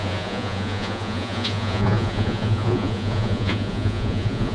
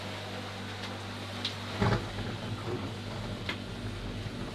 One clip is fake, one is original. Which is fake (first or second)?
first